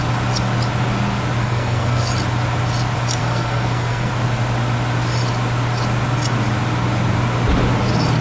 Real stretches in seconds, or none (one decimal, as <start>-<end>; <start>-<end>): 0.0-1.4; 2.1-3.2; 4.1-8.2